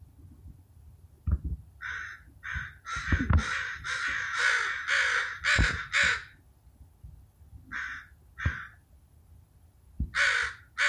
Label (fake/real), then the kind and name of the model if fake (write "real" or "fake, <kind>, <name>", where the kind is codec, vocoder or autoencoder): real